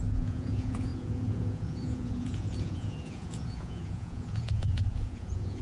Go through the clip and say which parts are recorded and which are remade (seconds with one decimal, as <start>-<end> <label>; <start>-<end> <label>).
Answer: 0.0-5.6 remade